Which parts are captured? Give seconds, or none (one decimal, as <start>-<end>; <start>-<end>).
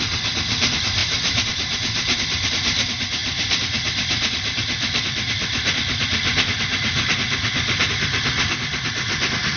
0.0-1.0; 2.5-9.6